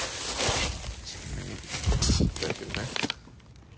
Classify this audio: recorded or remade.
recorded